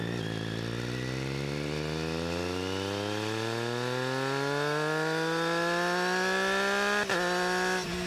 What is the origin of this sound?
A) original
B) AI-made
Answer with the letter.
A